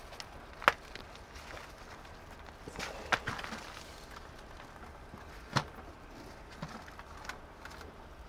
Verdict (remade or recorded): recorded